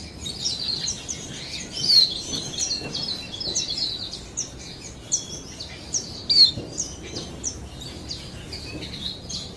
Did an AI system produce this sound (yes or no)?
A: no